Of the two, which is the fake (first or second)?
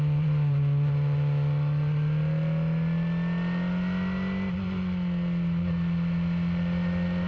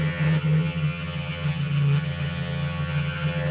second